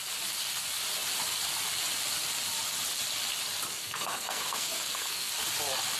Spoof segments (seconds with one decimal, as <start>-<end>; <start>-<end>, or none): 3.8-5.3